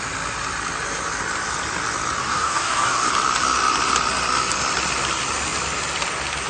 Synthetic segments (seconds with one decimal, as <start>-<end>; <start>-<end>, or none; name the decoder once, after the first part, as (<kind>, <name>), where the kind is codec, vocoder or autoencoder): 2.2-3.1 (codec, DAC)